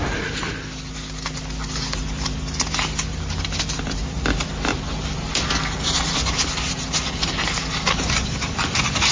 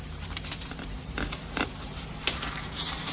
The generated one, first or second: second